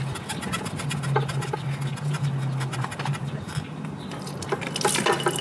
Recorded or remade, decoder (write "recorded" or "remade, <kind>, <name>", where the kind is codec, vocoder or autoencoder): recorded